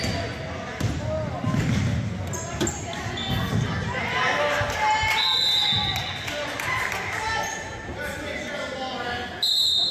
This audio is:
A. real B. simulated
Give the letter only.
A